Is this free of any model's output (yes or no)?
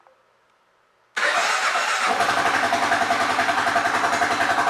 yes